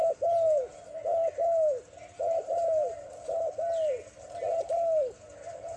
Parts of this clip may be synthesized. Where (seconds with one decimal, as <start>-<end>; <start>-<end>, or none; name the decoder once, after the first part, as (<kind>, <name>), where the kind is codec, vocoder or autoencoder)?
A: none